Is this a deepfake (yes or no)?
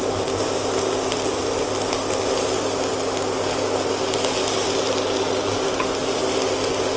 no